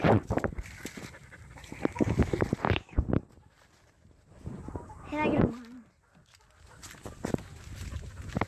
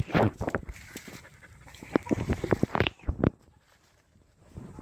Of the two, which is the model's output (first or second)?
second